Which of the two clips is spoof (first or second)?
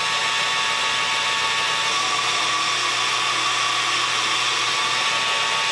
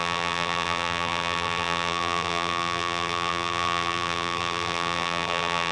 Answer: second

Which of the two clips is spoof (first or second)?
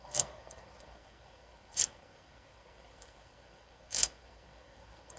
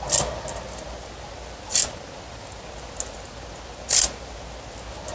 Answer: first